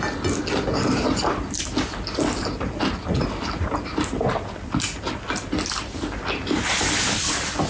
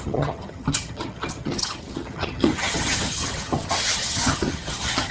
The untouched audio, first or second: first